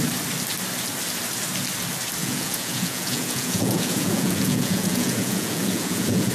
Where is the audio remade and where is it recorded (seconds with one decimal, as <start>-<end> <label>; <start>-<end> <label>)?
0.0-2.2 recorded; 2.2-6.3 remade